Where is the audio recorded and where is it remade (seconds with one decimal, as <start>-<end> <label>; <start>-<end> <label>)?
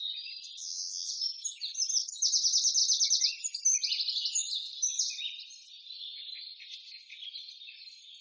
0.0-0.6 recorded; 0.6-1.1 remade; 1.1-8.2 recorded